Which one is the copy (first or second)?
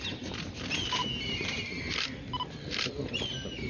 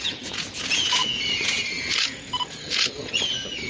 second